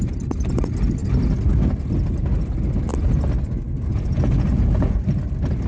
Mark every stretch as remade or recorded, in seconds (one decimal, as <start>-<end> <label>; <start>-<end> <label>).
0.0-3.9 recorded; 3.9-5.0 remade; 5.0-5.7 recorded